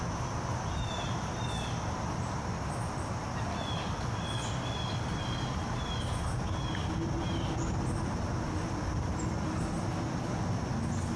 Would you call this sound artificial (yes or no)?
no